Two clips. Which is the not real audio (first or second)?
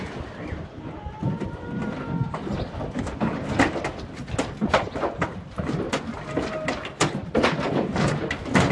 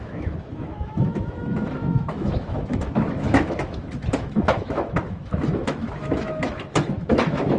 second